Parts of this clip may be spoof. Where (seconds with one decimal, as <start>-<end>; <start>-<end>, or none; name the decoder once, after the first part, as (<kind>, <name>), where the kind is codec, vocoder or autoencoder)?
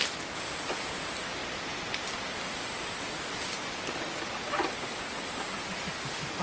none